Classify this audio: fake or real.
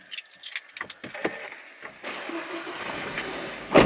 real